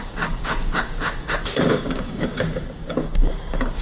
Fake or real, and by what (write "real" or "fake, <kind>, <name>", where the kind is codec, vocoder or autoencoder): fake, codec, DAC